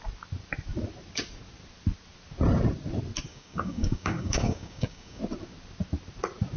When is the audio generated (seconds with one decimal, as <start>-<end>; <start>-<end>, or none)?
3.3-5.2

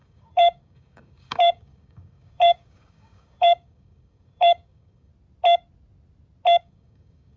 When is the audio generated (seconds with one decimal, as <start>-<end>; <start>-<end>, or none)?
0.0-5.1; 6.6-7.4

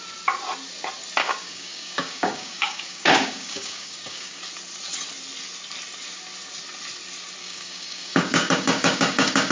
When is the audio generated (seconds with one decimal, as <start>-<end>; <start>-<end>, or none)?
1.2-4.4; 7.4-9.5

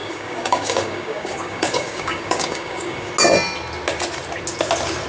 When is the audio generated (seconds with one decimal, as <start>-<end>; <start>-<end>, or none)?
0.0-3.1

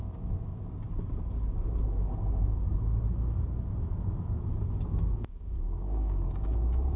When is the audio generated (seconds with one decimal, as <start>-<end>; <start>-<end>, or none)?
0.0-0.5; 4.7-7.0

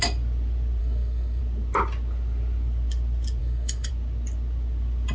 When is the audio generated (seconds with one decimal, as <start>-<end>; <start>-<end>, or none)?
0.8-1.4; 3.4-3.9

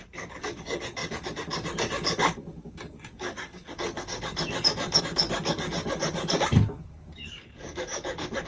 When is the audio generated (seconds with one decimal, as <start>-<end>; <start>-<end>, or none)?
0.0-8.5

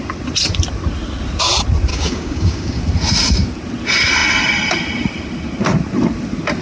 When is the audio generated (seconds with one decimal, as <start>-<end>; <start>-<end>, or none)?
1.9-2.8